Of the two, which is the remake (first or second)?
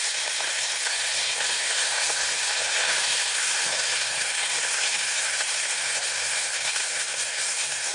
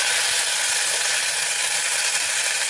first